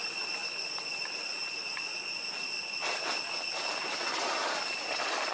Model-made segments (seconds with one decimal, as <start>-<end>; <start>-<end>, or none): none